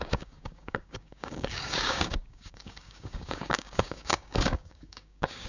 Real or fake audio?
fake